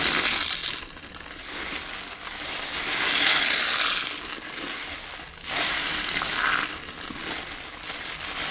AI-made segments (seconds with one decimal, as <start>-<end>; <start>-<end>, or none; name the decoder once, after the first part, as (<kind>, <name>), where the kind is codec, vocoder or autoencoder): none